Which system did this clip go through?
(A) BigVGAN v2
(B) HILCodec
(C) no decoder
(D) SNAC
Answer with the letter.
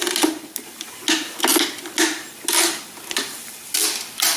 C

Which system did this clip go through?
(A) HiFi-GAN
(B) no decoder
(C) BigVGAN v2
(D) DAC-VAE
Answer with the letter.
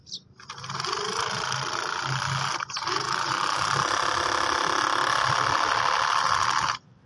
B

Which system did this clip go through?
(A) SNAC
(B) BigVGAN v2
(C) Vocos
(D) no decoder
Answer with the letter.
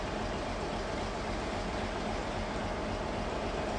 D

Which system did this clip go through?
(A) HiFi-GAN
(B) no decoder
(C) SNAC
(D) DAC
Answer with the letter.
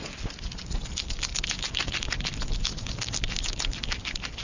B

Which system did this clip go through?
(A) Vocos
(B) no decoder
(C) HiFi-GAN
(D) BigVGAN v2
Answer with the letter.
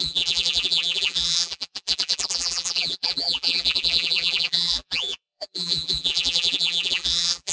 D